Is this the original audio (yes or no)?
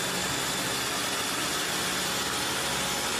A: yes